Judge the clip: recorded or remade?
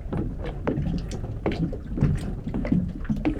recorded